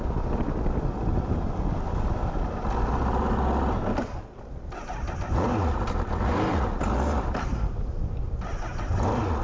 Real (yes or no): yes